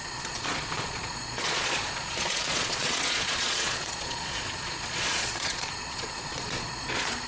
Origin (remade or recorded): remade